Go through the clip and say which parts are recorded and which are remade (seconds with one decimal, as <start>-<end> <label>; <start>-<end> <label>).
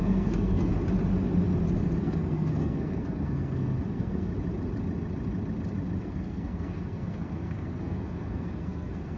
0.0-0.7 remade; 0.7-2.0 recorded; 2.0-4.3 remade; 4.3-6.0 recorded; 6.0-9.2 remade